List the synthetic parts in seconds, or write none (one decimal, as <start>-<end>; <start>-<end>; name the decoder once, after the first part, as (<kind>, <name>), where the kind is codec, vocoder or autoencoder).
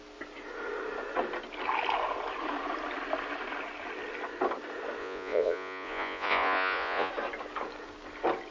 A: 5.0-7.1 (vocoder, Vocos)